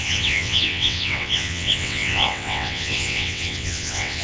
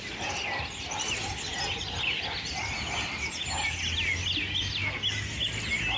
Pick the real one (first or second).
second